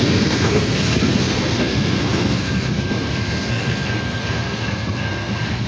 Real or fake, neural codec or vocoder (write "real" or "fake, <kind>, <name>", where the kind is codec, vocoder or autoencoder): fake, codec, SNAC